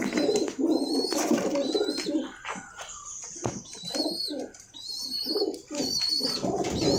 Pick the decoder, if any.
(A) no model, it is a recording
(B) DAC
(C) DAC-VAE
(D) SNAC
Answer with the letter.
A